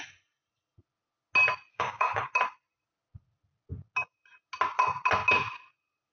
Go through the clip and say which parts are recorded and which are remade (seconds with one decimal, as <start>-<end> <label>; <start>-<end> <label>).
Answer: 0.0-1.7 recorded; 1.7-2.3 remade; 2.3-6.1 recorded